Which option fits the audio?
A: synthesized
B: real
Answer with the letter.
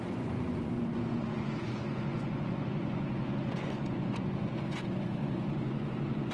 A